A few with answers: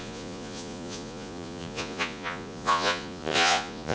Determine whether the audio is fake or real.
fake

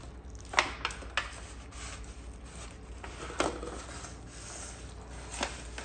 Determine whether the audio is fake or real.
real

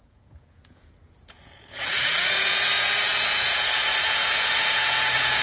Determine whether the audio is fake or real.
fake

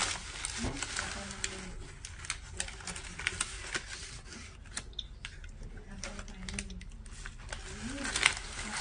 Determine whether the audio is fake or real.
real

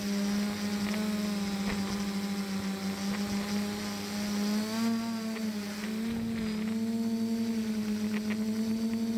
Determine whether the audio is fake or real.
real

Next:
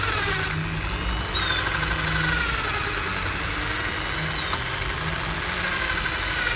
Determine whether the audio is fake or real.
real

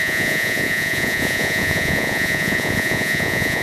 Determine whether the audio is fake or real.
fake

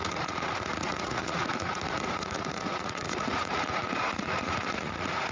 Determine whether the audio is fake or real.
fake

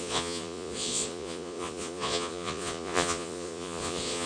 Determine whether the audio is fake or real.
fake